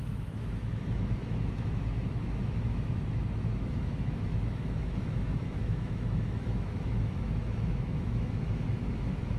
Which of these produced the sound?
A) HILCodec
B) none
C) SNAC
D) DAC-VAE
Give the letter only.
D